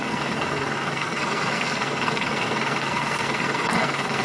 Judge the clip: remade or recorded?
remade